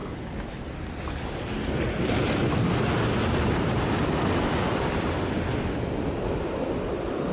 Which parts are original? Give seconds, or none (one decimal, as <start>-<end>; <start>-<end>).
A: 0.0-7.3